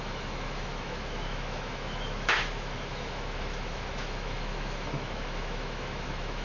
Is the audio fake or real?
fake